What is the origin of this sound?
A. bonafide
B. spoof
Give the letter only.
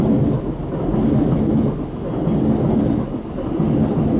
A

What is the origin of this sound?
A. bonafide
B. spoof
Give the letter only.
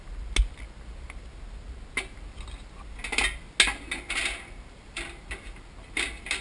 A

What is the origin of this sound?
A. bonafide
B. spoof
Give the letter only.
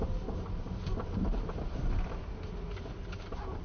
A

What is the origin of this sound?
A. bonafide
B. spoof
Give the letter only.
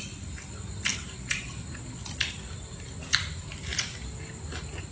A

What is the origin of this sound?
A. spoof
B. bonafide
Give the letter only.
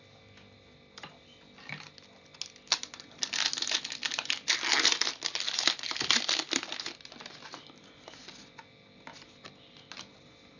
B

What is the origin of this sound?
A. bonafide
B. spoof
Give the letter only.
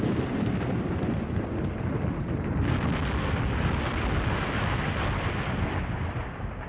A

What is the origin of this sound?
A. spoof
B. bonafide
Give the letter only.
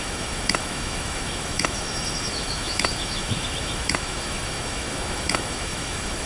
A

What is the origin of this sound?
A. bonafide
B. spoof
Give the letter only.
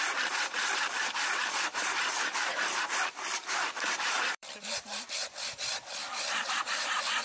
B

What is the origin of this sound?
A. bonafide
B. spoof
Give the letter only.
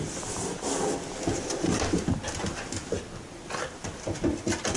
A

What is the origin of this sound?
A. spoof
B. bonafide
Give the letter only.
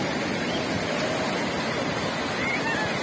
B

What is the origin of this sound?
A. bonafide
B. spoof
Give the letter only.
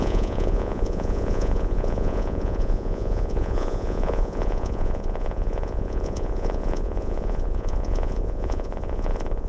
B